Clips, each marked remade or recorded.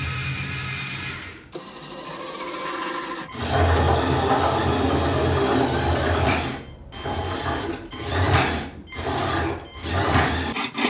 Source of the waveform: recorded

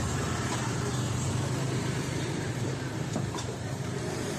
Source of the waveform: remade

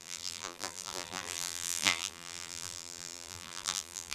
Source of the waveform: remade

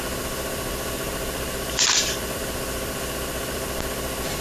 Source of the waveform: remade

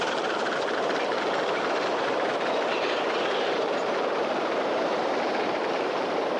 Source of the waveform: remade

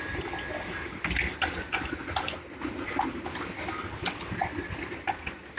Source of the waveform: recorded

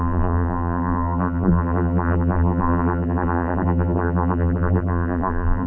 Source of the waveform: remade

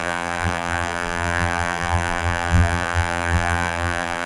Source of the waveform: remade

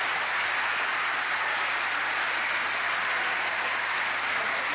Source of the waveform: recorded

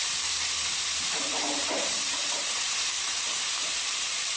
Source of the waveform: remade